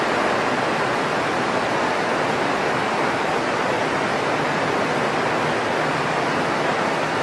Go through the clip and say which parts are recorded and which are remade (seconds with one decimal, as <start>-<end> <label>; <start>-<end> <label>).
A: 0.0-7.2 recorded